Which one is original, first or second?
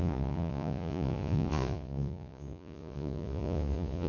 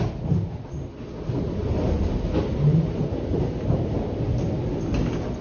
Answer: second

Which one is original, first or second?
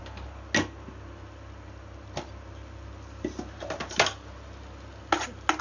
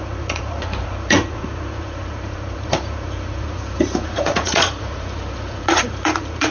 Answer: first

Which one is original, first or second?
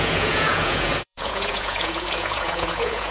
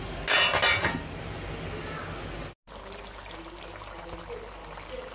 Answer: second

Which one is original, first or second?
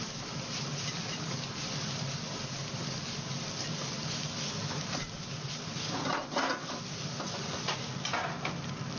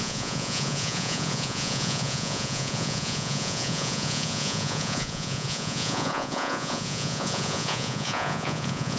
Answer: first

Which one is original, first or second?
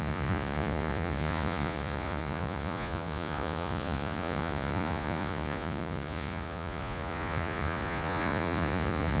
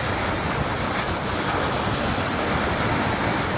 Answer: second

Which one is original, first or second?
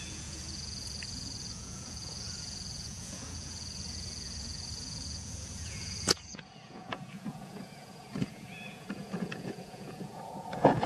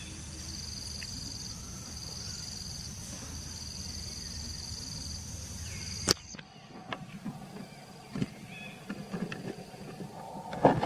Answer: second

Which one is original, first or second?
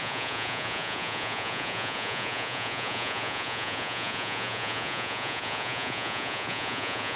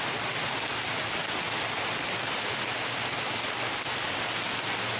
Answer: second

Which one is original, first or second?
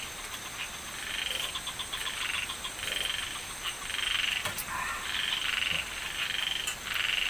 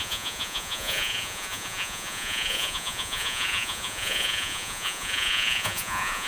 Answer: first